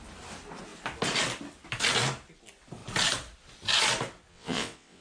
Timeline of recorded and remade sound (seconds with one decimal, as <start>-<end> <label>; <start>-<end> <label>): 0.0-4.3 recorded; 4.3-5.0 remade